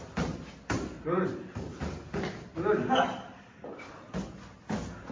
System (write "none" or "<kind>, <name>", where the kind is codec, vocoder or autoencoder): none